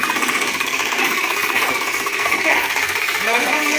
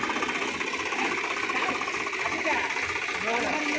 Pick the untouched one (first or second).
second